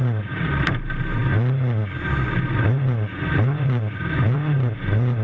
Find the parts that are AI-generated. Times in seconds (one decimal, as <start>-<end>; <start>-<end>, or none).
0.0-1.2; 2.6-5.2

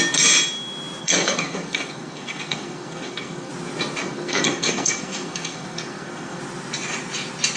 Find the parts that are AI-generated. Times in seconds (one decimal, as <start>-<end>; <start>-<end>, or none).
1.0-3.5; 4.0-6.4

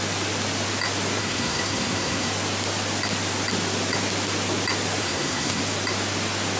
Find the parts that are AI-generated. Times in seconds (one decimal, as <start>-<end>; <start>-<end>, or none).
1.2-2.3; 5.0-5.6

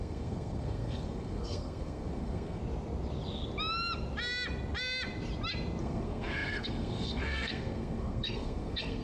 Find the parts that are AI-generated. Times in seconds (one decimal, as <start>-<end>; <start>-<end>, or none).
0.0-2.6; 5.8-9.0

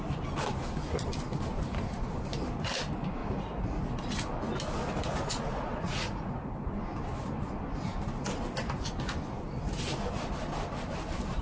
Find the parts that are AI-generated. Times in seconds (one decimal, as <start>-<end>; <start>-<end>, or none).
3.2-3.9; 5.5-6.3

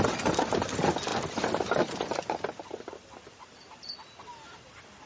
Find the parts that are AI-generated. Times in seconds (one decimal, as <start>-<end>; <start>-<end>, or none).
none

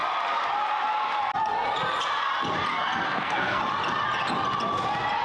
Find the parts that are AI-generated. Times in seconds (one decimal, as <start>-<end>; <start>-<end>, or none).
2.7-3.6